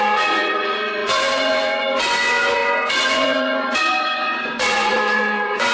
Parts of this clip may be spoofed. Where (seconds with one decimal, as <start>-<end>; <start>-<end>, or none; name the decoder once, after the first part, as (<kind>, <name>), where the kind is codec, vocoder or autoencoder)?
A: 0.0-5.7 (vocoder, Vocos)